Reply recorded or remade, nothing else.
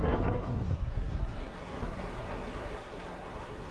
remade